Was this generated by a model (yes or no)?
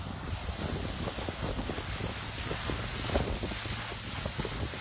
no